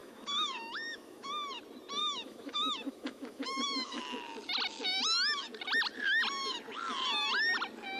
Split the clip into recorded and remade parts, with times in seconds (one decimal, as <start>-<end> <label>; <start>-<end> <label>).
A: 0.0-1.3 remade; 1.3-2.0 recorded; 2.0-4.0 remade; 4.0-8.0 recorded